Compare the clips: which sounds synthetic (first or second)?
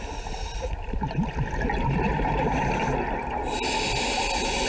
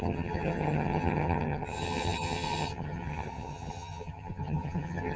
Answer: second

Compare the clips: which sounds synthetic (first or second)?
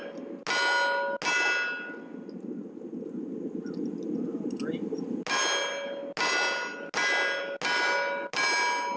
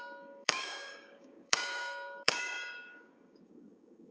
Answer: second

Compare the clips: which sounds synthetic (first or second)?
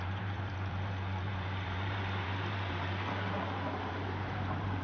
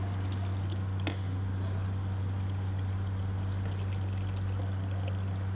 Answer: first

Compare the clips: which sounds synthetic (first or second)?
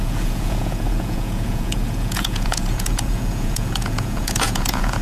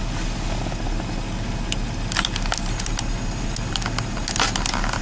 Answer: first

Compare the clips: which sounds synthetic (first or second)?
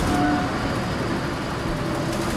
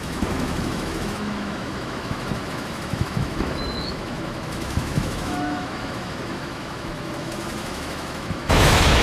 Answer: second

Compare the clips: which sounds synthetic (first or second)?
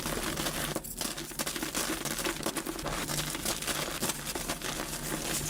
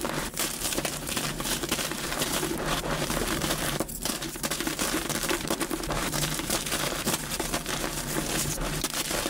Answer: second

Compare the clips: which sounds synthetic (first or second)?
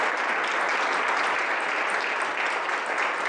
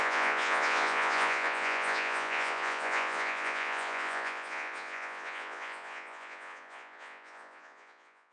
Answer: second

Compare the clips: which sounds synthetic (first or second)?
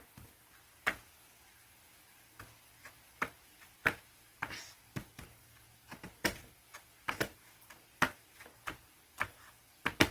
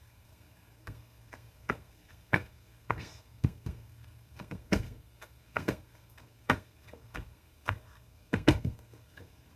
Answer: second